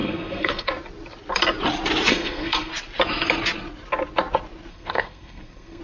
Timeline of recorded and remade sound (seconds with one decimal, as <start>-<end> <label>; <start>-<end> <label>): 0.0-0.7 remade; 0.7-2.1 recorded; 2.1-2.7 remade; 2.7-4.7 recorded; 4.7-5.8 remade